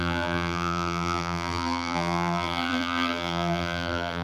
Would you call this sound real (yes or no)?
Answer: no